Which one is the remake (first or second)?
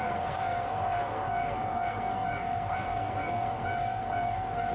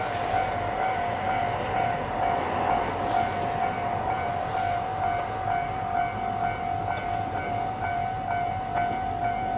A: first